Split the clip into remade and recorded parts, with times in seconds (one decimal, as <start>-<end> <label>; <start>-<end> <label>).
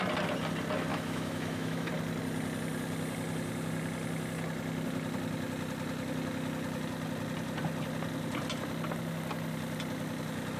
0.0-0.9 recorded; 0.9-1.9 remade; 1.9-10.6 recorded